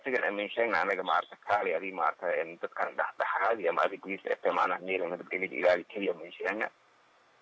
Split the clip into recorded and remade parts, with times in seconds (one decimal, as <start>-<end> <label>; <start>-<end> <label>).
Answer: 0.0-4.2 recorded; 4.2-5.3 remade; 5.3-7.4 recorded